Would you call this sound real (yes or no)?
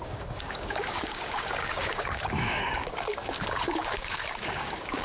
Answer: no